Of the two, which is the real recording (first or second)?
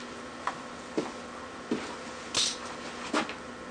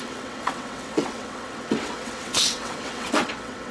first